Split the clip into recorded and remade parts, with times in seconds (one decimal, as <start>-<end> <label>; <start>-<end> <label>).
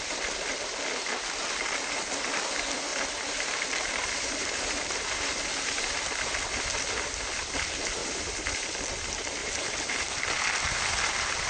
0.0-2.9 recorded; 2.9-6.3 remade; 6.3-9.4 recorded; 9.4-10.2 remade; 10.2-11.5 recorded